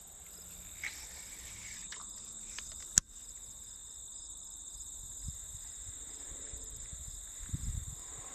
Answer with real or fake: real